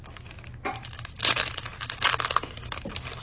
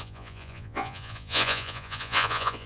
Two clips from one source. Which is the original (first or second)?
first